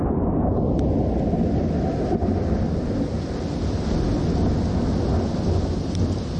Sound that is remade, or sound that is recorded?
recorded